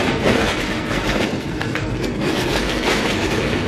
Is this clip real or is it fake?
fake